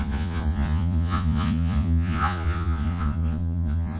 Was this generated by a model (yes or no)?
yes